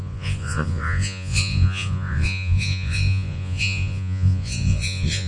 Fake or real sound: fake